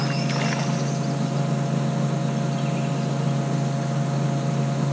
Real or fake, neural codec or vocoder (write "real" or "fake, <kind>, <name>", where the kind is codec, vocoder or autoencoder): real